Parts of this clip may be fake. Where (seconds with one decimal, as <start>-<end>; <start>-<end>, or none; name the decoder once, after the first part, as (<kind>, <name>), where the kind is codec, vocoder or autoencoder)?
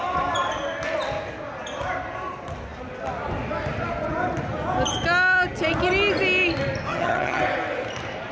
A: 6.9-7.4 (vocoder, HiFi-GAN)